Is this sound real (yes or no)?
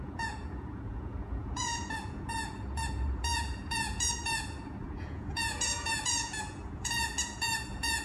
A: no